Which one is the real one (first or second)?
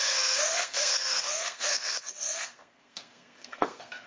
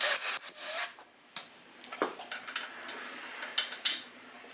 second